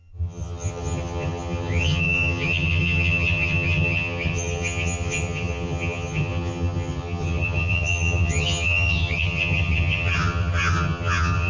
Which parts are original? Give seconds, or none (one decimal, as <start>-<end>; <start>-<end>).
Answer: none